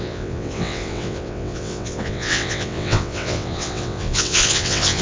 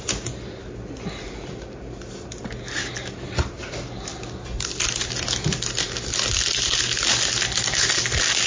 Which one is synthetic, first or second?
first